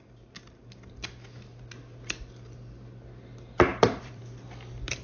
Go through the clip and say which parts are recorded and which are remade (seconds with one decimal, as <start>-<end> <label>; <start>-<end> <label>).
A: 0.0-3.7 recorded; 3.7-4.2 remade; 4.2-5.0 recorded